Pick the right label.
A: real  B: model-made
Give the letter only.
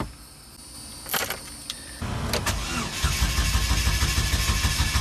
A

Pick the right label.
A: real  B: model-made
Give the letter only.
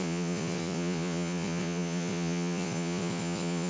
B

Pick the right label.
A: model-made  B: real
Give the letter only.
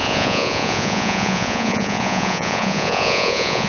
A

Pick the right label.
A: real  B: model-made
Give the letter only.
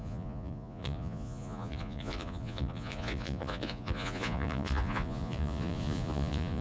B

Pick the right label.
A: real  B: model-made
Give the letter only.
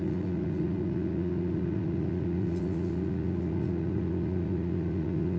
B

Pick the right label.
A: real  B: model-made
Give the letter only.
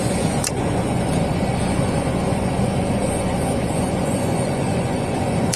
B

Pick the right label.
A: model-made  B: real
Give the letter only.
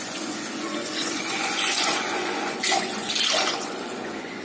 A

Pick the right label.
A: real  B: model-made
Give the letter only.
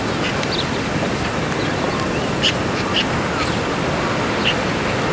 A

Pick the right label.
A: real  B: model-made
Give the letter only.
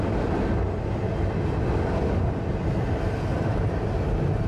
A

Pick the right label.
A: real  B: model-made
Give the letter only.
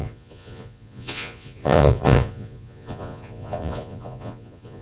B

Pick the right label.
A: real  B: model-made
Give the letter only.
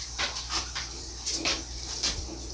A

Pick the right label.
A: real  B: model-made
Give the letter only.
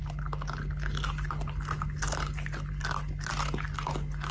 A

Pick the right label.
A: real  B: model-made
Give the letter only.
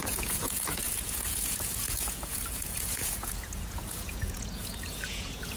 B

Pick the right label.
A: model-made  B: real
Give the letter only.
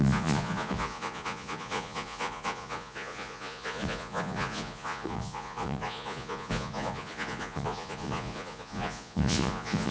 A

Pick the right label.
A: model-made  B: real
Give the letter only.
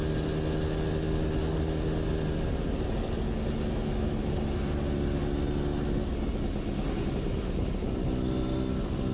B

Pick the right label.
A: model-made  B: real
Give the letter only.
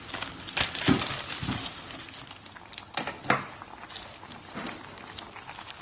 B